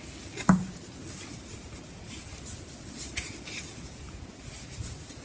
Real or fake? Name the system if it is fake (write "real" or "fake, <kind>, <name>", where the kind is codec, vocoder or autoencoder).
real